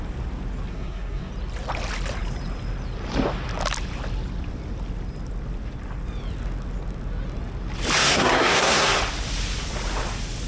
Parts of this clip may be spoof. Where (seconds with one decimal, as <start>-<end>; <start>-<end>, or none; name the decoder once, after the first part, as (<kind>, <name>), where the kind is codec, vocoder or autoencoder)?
0.7-1.3 (codec, SNAC); 8.0-9.0